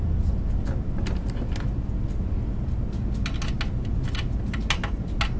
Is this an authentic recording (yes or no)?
yes